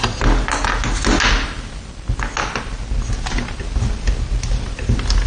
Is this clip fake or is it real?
real